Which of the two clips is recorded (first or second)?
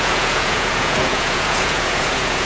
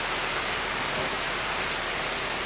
second